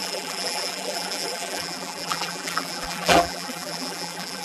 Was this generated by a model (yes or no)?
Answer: yes